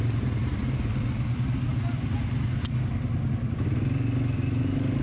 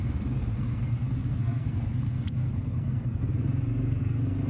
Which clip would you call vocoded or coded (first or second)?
second